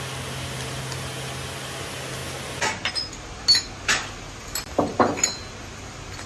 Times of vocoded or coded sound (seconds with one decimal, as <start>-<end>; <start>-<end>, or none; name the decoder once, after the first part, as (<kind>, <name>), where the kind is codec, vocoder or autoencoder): none